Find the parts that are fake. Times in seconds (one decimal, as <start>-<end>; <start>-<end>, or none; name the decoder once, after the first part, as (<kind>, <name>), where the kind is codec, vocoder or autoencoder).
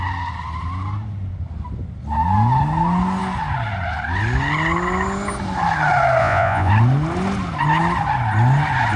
6.2-6.7 (vocoder, Vocos)